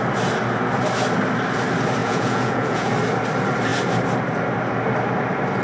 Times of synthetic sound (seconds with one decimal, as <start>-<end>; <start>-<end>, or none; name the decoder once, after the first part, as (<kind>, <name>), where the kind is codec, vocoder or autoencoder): 2.0-2.9 (vocoder, Vocos)